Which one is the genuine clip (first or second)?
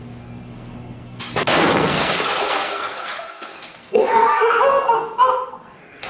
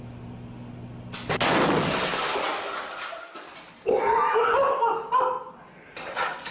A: second